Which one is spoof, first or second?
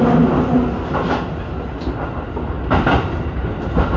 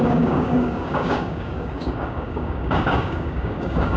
second